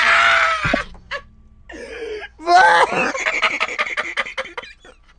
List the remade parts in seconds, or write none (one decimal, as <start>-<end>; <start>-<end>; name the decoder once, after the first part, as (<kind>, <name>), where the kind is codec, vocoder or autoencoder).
none